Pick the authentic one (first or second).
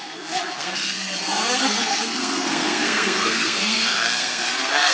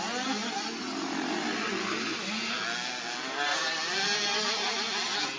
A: second